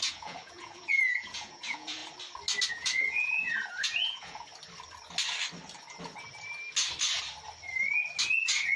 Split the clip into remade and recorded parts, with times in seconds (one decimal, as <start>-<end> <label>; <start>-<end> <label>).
0.0-2.0 remade; 2.0-2.7 recorded; 2.7-4.5 remade; 4.5-8.8 recorded